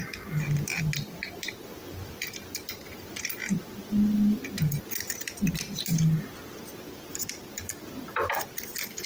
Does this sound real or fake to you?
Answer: real